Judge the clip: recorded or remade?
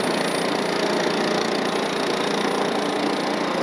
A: recorded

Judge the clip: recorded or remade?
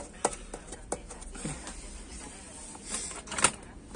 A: recorded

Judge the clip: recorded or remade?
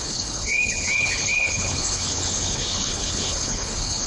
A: remade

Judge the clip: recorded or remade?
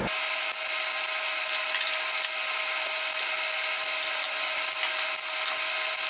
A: recorded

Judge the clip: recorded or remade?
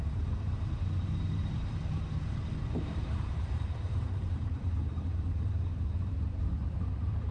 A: remade